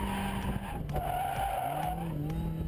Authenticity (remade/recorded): recorded